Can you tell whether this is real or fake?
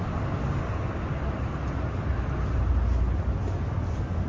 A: real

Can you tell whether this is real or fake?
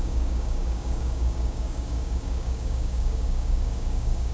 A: fake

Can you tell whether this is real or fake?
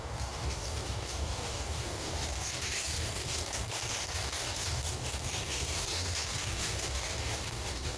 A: fake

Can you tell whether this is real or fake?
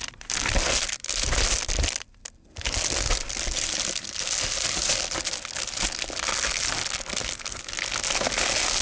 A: real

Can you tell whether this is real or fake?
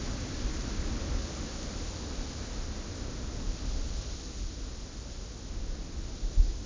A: real